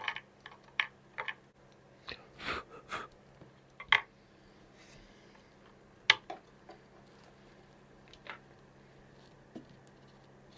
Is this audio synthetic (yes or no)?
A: no